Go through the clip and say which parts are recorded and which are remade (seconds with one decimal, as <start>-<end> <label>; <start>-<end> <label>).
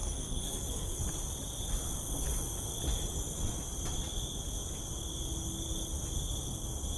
0.0-1.0 remade; 1.0-7.0 recorded